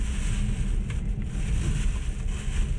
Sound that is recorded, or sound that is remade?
recorded